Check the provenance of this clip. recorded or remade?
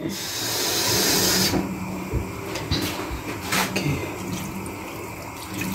recorded